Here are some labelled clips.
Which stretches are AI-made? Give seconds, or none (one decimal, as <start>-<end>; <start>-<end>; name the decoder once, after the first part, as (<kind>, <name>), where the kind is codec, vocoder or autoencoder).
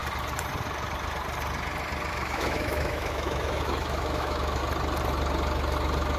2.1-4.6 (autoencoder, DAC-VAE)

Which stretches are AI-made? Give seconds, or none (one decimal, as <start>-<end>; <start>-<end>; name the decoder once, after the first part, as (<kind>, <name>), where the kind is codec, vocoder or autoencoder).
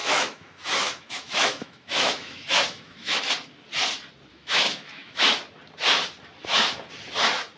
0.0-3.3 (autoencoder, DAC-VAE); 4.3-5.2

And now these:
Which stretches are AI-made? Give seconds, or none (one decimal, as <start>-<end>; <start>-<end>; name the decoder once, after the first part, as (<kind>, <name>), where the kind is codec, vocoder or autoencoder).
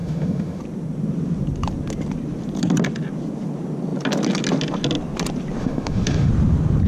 0.0-0.6 (autoencoder, DAC-VAE); 5.6-6.3